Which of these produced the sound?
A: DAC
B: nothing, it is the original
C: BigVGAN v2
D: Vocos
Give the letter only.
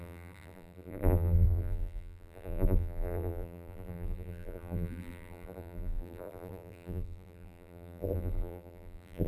C